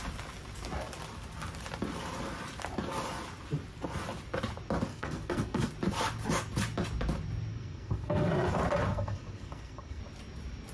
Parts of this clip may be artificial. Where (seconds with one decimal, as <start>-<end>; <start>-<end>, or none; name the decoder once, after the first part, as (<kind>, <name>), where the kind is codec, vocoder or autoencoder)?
4.9-5.7 (codec, SNAC); 7.5-8.3; 8.9-10.0